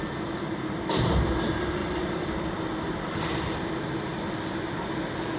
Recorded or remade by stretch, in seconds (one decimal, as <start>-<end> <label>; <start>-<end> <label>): 0.0-5.4 recorded